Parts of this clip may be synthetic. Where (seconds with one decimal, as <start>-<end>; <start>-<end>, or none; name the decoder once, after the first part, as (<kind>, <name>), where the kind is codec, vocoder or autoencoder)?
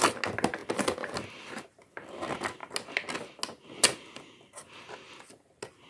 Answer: none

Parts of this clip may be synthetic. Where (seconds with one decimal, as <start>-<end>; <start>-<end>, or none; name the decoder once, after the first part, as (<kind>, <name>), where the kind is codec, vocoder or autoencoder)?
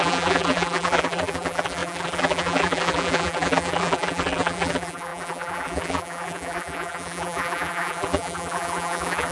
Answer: 0.0-9.3 (vocoder, BigVGAN v2)